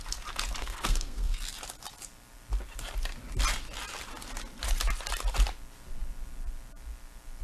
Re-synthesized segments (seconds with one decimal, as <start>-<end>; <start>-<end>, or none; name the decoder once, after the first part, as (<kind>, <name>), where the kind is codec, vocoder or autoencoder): 0.6-1.4 (codec, SNAC)